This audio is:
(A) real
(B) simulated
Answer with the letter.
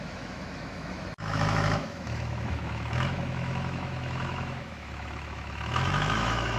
B